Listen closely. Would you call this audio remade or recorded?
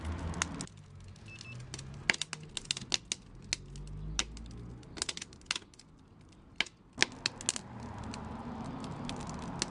recorded